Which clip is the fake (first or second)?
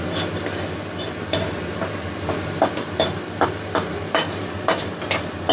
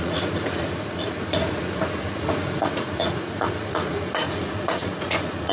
second